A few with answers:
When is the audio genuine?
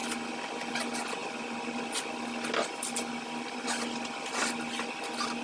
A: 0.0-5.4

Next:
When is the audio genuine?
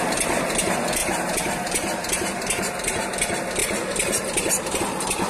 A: 0.0-1.0; 3.1-3.6; 4.8-5.3